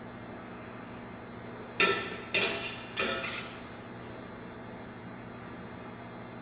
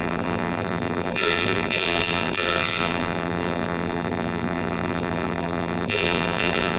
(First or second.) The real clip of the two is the first